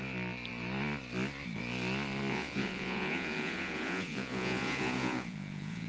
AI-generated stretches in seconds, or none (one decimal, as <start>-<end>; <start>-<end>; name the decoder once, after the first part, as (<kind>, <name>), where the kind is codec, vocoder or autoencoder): 2.3-5.9 (vocoder, Vocos)